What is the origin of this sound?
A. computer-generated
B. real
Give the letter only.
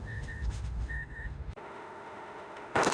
A